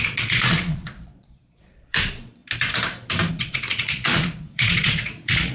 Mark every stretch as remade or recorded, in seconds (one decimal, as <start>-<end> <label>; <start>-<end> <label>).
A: 0.0-2.4 remade; 2.4-3.3 recorded; 3.3-5.5 remade